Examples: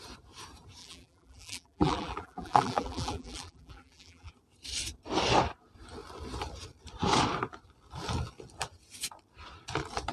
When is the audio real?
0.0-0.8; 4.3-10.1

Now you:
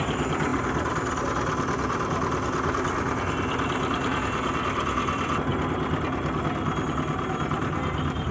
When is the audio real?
0.0-0.5; 1.2-8.3